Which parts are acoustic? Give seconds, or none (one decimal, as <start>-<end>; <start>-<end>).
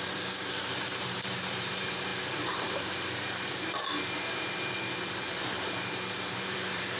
none